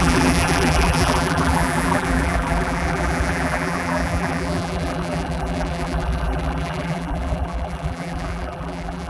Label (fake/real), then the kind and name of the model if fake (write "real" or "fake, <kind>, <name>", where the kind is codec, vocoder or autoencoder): fake, vocoder, BigVGAN v2